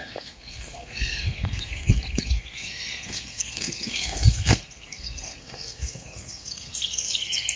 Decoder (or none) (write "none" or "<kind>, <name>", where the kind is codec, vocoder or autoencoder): codec, SNAC